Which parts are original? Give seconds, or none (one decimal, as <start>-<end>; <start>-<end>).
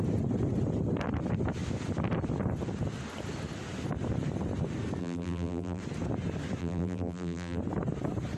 0.0-5.0; 5.8-6.6; 7.6-8.4